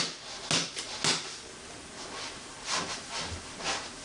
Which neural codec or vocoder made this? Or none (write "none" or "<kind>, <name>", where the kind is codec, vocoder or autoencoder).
none